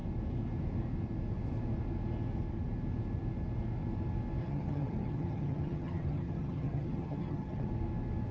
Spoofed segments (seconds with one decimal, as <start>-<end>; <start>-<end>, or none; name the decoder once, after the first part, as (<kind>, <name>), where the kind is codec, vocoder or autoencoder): 4.4-7.7 (vocoder, HiFi-GAN)